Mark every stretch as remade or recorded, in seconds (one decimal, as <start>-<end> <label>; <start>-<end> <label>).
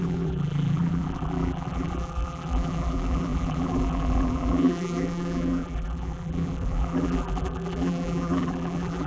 0.0-9.1 remade